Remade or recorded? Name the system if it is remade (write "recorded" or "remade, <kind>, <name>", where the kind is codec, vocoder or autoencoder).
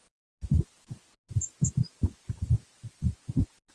recorded